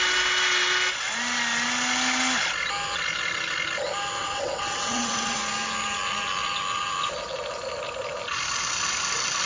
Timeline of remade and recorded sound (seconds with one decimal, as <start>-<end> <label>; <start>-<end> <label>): 0.0-4.2 recorded; 4.2-5.4 remade; 5.4-9.5 recorded